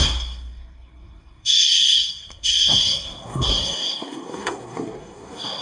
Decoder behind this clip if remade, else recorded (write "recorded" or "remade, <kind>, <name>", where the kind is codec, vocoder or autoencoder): remade, codec, SNAC